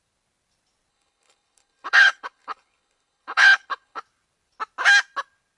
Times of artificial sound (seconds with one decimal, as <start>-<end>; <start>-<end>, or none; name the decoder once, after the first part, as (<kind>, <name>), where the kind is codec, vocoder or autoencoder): 0.9-4.0 (codec, HILCodec)